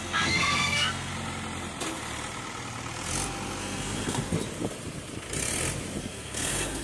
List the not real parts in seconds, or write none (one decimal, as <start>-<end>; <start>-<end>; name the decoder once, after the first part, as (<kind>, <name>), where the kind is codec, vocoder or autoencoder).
0.0-1.1 (codec, SNAC); 3.6-4.2; 6.0-6.8

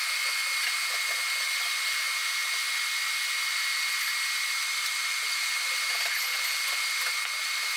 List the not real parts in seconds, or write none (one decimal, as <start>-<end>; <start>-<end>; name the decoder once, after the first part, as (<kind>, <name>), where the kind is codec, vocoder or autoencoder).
none

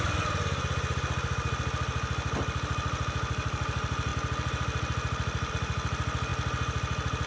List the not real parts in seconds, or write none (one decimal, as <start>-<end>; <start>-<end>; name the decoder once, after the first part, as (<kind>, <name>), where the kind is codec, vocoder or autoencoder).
none

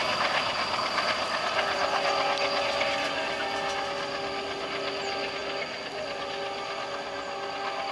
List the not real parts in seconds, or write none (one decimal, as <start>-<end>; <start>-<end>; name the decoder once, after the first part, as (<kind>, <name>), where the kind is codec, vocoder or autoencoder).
none

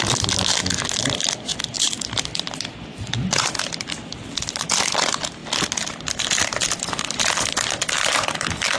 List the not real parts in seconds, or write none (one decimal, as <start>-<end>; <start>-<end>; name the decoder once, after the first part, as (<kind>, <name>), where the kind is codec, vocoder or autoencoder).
none

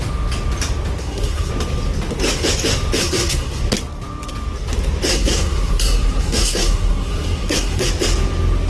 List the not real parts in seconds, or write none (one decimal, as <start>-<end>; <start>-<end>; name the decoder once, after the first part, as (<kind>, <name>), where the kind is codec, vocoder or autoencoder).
1.0-1.5 (codec, SNAC); 3.0-3.6; 5.1-7.9

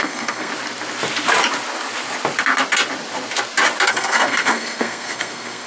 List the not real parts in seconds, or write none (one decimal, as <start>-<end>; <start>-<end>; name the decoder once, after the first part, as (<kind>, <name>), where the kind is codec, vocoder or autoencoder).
0.0-0.5 (codec, SNAC); 3.9-5.7

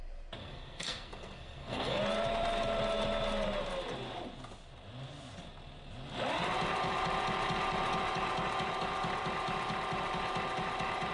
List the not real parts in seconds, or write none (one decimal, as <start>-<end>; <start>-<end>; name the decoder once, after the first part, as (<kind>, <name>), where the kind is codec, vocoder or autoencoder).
0.4-2.0 (codec, SNAC)